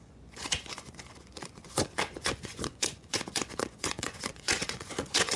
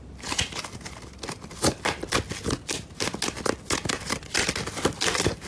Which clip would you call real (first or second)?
second